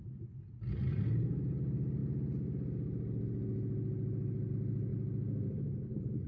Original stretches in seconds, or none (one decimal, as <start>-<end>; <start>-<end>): 0.0-6.3